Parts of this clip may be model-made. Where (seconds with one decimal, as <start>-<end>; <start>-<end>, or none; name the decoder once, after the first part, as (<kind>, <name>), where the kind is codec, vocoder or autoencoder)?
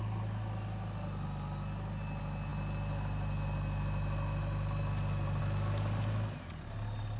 none